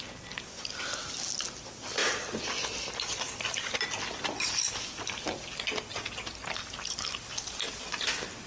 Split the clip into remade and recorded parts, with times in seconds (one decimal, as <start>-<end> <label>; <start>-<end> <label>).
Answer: 0.0-8.5 recorded